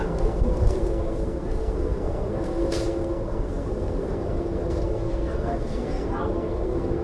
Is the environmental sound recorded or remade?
remade